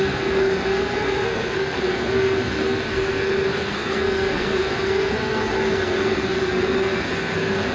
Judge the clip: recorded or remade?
remade